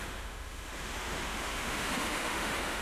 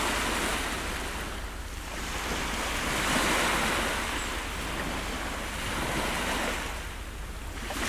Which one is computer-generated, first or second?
first